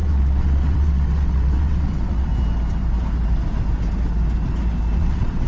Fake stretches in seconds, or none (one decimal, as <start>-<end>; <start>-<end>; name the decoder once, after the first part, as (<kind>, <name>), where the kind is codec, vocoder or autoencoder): 0.0-2.3 (vocoder, WaveNeXt); 5.0-5.5

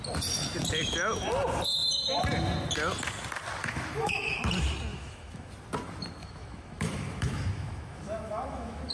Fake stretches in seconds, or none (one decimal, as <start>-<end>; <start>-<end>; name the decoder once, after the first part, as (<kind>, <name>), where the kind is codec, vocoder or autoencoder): 3.6-4.4 (autoencoder, DAC-VAE); 4.9-5.5; 6.2-8.9

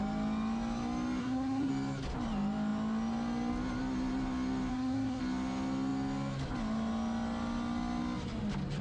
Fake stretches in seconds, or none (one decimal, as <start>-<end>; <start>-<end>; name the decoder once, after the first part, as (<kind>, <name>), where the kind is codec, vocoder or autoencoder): 1.2-1.7 (codec, SNAC); 4.7-5.2

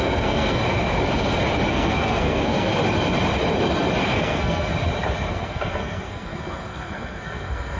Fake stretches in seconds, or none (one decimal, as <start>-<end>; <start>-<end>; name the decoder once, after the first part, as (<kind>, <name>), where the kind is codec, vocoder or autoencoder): 0.0-0.6 (codec, SNAC); 1.7-2.7; 4.0-4.7; 5.3-7.8

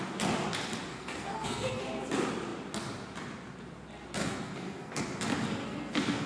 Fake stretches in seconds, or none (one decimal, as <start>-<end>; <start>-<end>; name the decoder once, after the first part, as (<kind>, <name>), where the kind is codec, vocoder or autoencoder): 0.9-1.8 (codec, SNAC); 4.2-5.0; 5.6-6.3